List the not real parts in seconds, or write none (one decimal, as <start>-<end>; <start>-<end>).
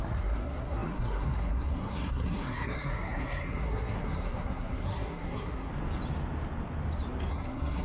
0.0-5.7; 7.3-7.8